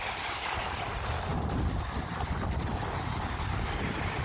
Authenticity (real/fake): real